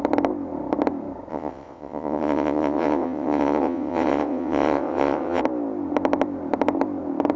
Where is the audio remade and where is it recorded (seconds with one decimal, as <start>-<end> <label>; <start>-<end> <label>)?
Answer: 0.0-1.3 recorded; 1.3-5.4 remade; 5.4-7.4 recorded

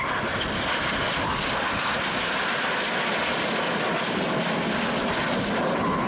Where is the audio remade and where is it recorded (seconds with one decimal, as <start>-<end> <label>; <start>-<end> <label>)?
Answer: 0.0-6.1 recorded

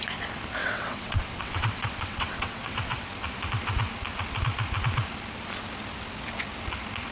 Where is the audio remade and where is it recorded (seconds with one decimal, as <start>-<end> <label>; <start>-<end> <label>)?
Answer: 0.0-0.6 recorded; 0.6-3.1 remade; 3.1-7.1 recorded

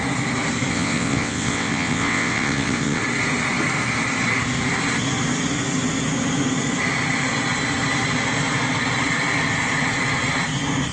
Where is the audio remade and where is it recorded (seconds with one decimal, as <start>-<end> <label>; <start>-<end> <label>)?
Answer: 0.0-0.7 recorded; 0.7-3.0 remade; 3.0-10.9 recorded

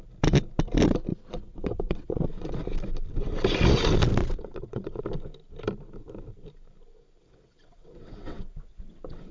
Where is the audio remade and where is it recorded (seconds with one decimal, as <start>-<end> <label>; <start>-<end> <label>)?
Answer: 0.0-1.1 recorded; 1.1-2.6 remade; 2.6-4.2 recorded; 4.2-5.0 remade; 5.0-7.2 recorded; 7.2-9.3 remade

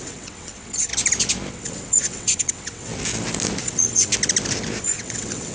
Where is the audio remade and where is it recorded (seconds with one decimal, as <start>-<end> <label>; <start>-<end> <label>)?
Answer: 0.0-0.9 remade; 0.9-1.5 recorded; 1.5-2.9 remade; 2.9-3.6 recorded; 3.6-4.1 remade; 4.1-4.8 recorded; 4.8-5.5 remade

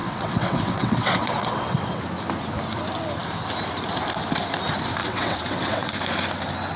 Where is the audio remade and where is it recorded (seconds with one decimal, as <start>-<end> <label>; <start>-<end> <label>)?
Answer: 0.0-2.0 remade; 2.0-5.0 recorded; 5.0-5.9 remade; 5.9-6.8 recorded

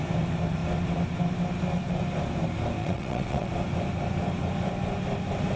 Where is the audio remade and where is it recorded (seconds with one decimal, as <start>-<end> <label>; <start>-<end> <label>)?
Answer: 0.0-2.8 recorded; 2.8-3.5 remade; 3.5-5.6 recorded